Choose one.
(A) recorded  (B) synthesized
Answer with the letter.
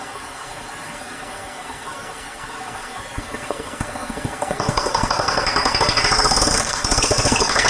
B